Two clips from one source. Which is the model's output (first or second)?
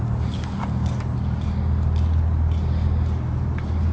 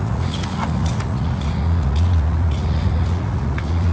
second